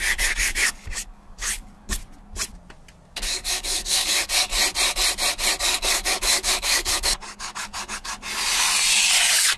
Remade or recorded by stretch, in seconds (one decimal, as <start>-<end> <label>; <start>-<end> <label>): 0.0-2.0 remade; 2.0-3.1 recorded; 3.1-4.5 remade; 4.5-5.6 recorded; 5.6-8.1 remade; 8.1-9.6 recorded